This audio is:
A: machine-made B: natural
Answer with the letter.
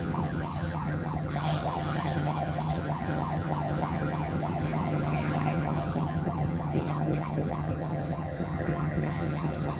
A